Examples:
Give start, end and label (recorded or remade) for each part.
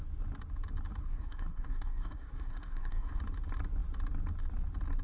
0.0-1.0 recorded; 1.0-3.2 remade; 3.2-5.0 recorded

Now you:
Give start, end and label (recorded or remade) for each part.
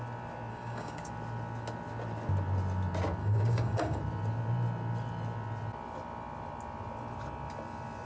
0.0-0.5 recorded; 0.5-1.1 remade; 1.1-3.2 recorded; 3.2-4.0 remade; 4.0-8.1 recorded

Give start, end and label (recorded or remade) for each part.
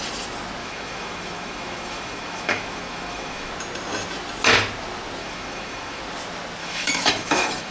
0.0-0.6 recorded; 0.6-3.5 remade; 3.5-5.2 recorded; 5.2-6.0 remade; 6.0-6.6 recorded; 6.6-7.7 remade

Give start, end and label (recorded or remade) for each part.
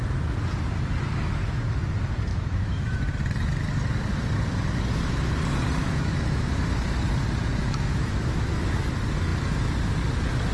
0.0-2.3 recorded; 2.3-3.0 remade; 3.0-5.8 recorded; 5.8-6.5 remade; 6.5-7.6 recorded; 7.6-8.9 remade; 8.9-10.5 recorded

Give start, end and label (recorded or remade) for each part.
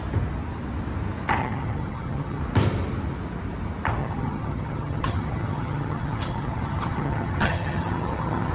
0.0-1.4 recorded; 1.4-2.4 remade; 2.4-4.0 recorded; 4.0-8.5 remade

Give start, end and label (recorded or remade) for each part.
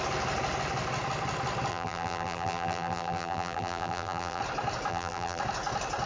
0.0-1.7 recorded; 1.7-4.4 remade; 4.4-4.9 recorded; 4.9-5.4 remade; 5.4-6.1 recorded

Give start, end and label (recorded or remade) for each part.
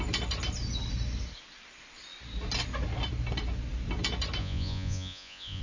0.0-4.4 recorded; 4.4-5.6 remade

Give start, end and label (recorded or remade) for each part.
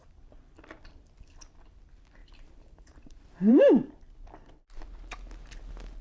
0.0-2.2 recorded; 2.2-3.6 remade; 3.6-6.0 recorded